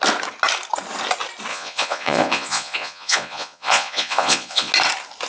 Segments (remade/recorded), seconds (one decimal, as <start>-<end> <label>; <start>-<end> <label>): 0.0-1.5 recorded; 1.5-4.7 remade; 4.7-5.3 recorded